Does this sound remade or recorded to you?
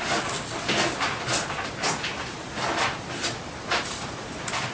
recorded